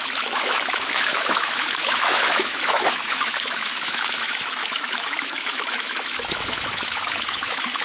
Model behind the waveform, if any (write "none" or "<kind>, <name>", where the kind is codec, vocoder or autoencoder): autoencoder, DAC-VAE